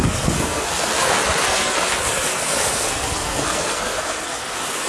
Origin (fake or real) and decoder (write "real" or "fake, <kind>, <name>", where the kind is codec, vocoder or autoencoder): fake, codec, SNAC